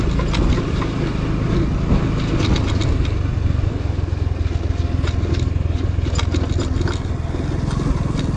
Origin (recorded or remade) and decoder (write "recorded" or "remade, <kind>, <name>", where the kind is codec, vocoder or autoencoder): recorded